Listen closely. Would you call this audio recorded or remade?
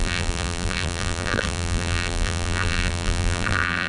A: remade